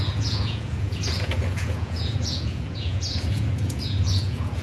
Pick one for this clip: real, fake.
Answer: fake